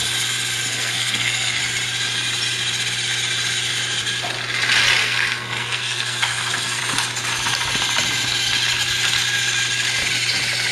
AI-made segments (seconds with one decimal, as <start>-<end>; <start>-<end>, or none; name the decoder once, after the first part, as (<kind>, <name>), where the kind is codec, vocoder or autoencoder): 0.7-1.6 (codec, SNAC); 5.0-6.8